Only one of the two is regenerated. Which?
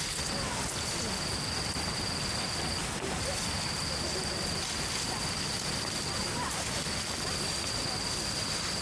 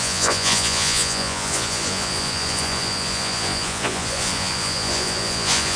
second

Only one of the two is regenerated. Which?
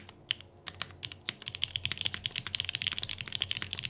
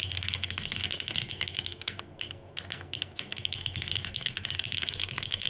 second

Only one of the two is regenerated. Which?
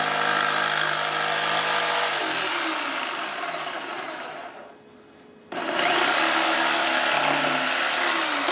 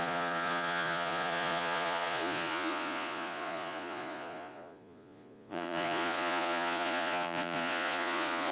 second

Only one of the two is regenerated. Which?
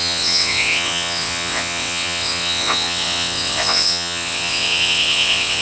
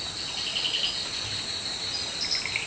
first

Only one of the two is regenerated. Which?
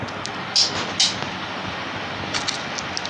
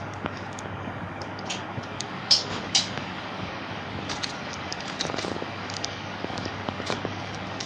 second